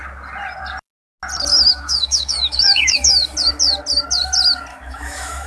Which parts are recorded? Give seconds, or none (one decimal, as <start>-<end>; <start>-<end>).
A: 0.0-1.5; 3.1-4.7